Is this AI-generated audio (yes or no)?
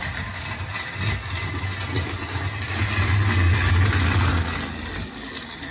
no